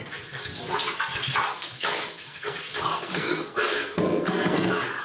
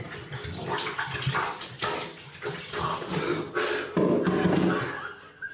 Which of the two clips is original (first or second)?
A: second